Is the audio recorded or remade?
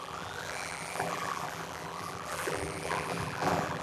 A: remade